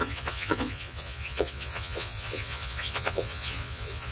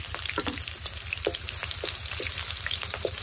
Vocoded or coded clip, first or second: first